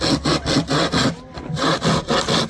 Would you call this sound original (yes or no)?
yes